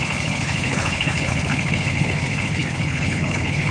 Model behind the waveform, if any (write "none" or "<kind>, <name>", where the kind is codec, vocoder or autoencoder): codec, HILCodec